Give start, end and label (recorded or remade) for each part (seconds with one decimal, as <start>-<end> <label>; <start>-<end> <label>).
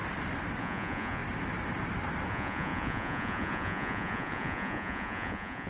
0.0-0.6 recorded; 0.6-1.2 remade; 1.2-2.3 recorded; 2.3-5.7 remade